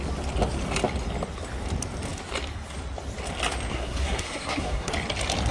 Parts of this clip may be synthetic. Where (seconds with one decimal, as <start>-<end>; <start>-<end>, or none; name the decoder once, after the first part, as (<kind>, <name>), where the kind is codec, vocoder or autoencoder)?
3.7-4.9 (codec, SNAC)